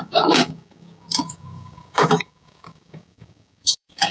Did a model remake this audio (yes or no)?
yes